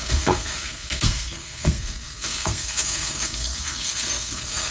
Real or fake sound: fake